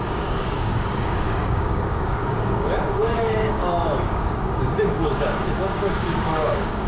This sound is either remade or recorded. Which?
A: remade